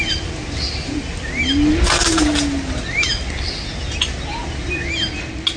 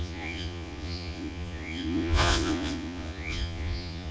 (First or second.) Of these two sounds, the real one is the first